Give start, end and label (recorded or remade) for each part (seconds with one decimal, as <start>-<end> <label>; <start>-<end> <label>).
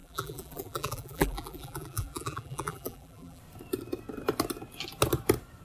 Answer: 0.0-3.4 remade; 3.4-5.6 recorded